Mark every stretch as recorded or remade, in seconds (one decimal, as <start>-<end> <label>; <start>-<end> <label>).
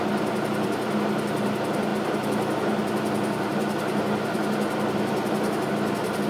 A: 0.0-6.3 recorded